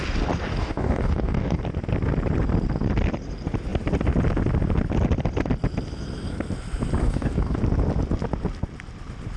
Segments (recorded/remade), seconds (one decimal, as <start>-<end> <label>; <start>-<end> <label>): 0.0-0.6 recorded; 0.6-1.6 remade; 1.6-7.0 recorded; 7.0-7.6 remade; 7.6-9.4 recorded